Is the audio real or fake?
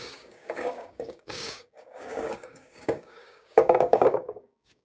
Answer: fake